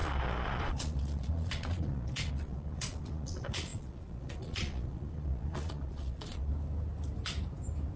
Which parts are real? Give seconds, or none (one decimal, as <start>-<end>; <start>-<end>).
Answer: 6.5-8.0